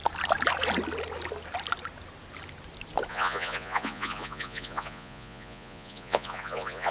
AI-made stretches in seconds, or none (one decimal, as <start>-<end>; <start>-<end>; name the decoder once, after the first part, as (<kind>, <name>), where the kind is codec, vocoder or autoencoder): 3.1-6.9 (vocoder, Vocos)